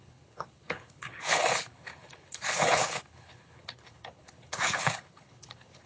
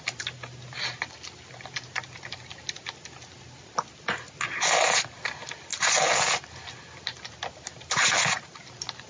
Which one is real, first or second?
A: second